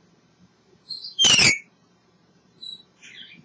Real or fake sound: fake